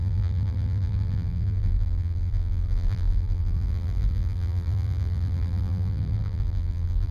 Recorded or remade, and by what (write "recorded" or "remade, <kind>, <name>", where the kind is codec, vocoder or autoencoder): remade, vocoder, BigVGAN v2